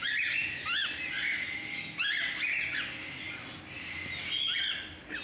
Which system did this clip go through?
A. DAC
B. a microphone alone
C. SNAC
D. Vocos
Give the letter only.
B